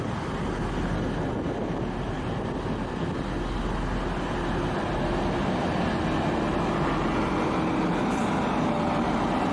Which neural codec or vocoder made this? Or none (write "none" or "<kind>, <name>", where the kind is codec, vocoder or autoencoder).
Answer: none